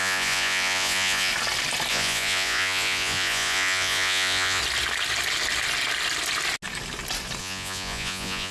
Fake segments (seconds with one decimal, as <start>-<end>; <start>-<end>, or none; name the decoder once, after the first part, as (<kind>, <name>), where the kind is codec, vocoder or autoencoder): 0.0-1.3 (vocoder, Vocos); 1.9-4.6; 7.4-8.5